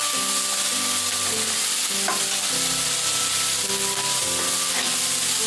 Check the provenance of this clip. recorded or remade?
recorded